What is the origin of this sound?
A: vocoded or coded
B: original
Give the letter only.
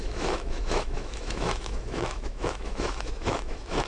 A